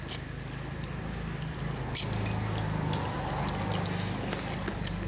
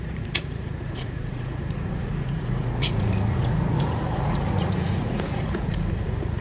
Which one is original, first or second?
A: first